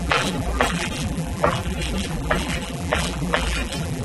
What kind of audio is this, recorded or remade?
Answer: remade